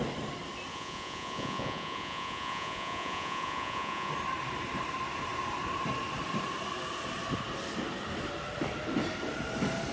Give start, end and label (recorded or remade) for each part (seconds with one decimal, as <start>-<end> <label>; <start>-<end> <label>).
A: 0.0-0.7 recorded; 0.7-4.1 remade; 4.1-9.9 recorded